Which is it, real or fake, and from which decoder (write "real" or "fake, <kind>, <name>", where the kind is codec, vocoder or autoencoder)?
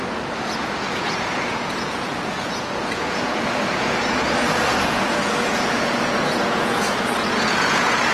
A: fake, vocoder, Vocos